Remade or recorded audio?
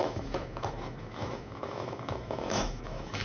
remade